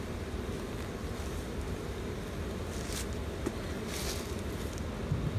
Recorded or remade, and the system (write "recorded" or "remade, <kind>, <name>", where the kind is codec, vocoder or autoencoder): recorded